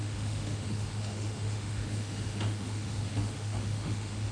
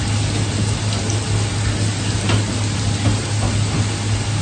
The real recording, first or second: second